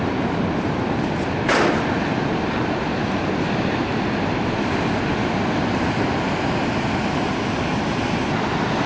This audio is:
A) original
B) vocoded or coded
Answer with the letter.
A